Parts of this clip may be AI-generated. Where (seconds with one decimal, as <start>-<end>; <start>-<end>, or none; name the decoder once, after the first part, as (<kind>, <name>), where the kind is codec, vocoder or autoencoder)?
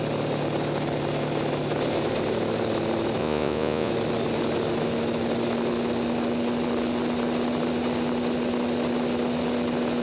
3.2-3.9 (vocoder, Vocos)